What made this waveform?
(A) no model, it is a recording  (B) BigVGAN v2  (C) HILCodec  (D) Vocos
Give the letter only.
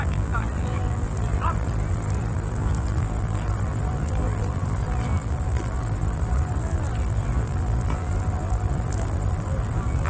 B